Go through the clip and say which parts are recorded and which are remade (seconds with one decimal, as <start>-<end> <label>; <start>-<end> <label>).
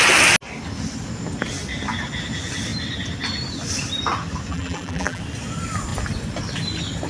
0.0-4.5 recorded; 4.5-5.2 remade; 5.2-7.1 recorded